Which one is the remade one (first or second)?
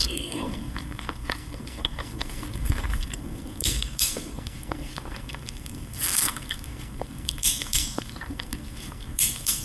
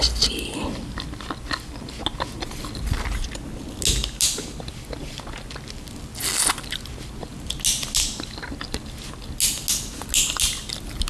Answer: first